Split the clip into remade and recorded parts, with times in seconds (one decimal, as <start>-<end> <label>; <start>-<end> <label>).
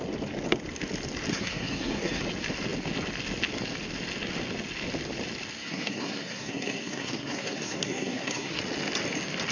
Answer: 0.0-1.3 recorded; 1.3-2.2 remade; 2.2-5.6 recorded; 5.6-8.6 remade; 8.6-9.5 recorded